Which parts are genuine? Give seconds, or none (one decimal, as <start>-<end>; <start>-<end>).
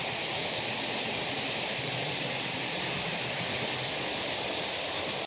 0.0-5.3